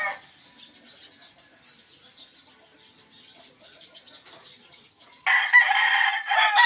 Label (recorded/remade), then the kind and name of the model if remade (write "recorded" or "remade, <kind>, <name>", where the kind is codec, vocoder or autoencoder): recorded